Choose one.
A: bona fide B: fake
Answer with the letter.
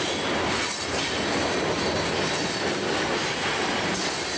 A